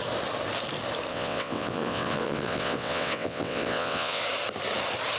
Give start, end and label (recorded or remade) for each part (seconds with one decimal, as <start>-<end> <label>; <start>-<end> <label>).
0.0-1.1 recorded; 1.1-4.2 remade; 4.2-5.2 recorded

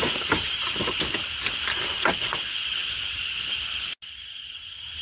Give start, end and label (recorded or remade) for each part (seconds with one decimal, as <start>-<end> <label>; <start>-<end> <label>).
0.0-1.7 recorded; 1.7-2.3 remade; 2.3-5.0 recorded

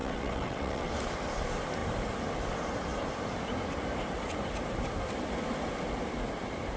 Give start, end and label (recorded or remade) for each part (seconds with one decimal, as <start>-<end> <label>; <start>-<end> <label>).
0.0-0.9 remade; 0.9-6.8 recorded

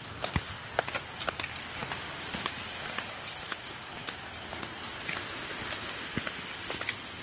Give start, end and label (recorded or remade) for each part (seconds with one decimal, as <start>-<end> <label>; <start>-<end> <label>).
0.0-7.2 recorded

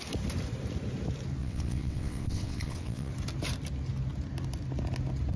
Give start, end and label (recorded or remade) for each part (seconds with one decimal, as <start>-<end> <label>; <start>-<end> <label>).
0.0-1.4 recorded; 1.4-3.1 remade; 3.1-5.4 recorded

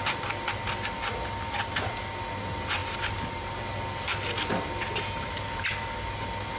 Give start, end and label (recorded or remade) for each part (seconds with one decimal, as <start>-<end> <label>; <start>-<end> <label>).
0.0-6.6 recorded

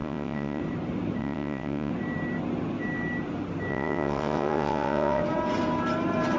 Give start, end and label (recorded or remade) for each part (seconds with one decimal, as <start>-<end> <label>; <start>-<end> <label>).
0.0-0.6 remade; 0.6-1.2 recorded; 1.2-1.9 remade; 1.9-3.7 recorded; 3.7-5.2 remade; 5.2-6.4 recorded

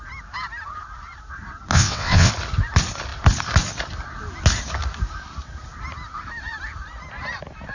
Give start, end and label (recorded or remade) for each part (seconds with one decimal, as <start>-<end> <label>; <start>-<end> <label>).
0.0-1.7 recorded; 1.7-2.3 remade; 2.3-7.7 recorded